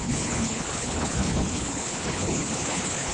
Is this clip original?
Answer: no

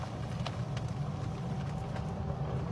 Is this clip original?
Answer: yes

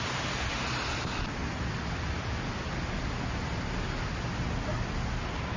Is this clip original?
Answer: yes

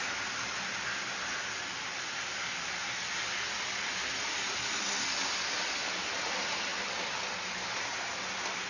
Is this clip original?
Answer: yes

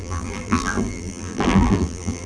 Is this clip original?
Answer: no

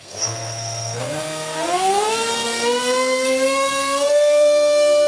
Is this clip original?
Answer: no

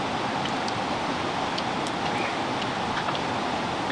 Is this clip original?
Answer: yes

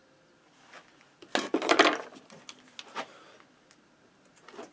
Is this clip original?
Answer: yes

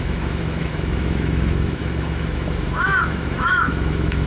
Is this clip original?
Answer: no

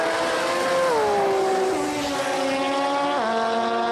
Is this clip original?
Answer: yes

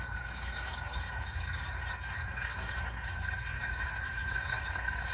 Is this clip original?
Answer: no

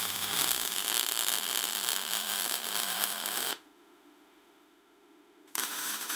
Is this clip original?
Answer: no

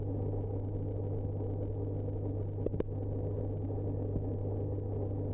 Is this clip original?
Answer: yes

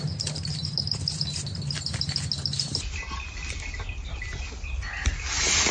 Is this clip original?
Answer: yes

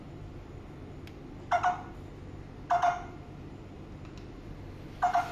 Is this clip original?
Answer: yes